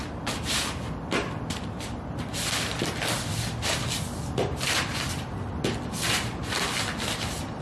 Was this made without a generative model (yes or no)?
no